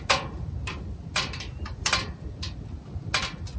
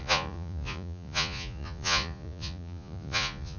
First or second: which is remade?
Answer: second